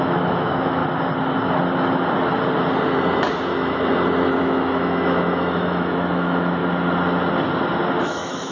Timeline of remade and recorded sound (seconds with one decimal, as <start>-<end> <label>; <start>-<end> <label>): 0.0-0.8 remade; 0.8-4.4 recorded; 4.4-6.6 remade; 6.6-8.0 recorded; 8.0-8.5 remade